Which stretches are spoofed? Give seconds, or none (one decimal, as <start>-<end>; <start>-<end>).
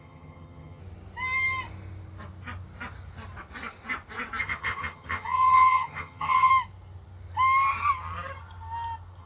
0.0-0.8; 4.4-6.5